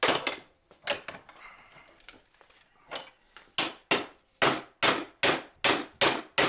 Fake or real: real